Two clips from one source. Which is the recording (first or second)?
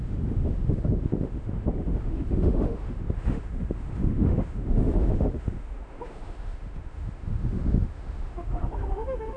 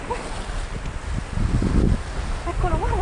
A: second